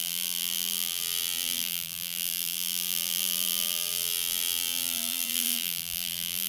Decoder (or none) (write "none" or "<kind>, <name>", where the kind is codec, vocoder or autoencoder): vocoder, BigVGAN v2